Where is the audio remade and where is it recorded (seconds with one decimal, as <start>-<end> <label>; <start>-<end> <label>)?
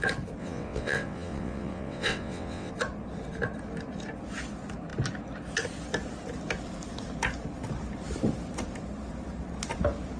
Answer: 0.0-0.4 recorded; 0.4-2.7 remade; 2.7-10.2 recorded